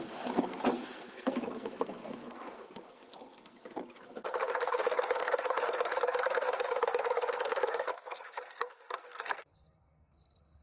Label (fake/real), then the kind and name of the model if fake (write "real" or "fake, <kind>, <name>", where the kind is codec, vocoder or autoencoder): fake, codec, SNAC